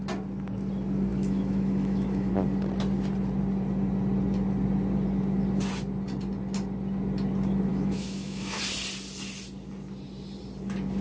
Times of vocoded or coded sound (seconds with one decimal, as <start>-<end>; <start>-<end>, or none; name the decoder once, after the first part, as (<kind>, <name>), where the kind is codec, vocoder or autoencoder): 1.1-2.3 (autoencoder, DAC-VAE); 7.7-8.6

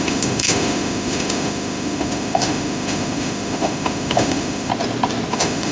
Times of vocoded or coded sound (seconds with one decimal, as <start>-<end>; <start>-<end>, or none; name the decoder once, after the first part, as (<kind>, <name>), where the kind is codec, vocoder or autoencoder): 0.0-4.7 (autoencoder, DAC-VAE); 5.3-5.7

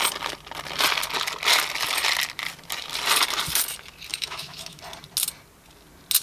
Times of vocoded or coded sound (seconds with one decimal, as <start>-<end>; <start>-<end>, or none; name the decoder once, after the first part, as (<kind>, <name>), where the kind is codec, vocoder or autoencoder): 4.1-4.8 (autoencoder, DAC-VAE)

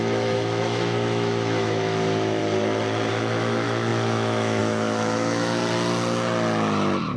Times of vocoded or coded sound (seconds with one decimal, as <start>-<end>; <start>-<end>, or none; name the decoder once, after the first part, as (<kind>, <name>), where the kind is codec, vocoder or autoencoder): 0.0-2.4 (autoencoder, DAC-VAE); 3.1-5.6

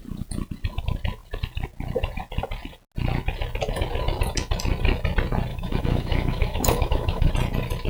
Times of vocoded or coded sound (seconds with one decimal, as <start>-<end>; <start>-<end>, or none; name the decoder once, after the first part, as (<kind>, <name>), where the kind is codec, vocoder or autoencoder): 5.5-7.3 (autoencoder, DAC-VAE)

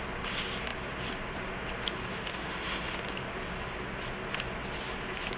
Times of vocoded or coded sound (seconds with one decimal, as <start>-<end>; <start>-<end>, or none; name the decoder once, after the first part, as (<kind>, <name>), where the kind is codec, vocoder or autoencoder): 2.1-3.0 (autoencoder, DAC-VAE)